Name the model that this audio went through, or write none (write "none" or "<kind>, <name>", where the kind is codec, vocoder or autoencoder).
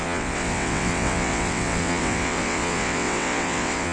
vocoder, WaveNeXt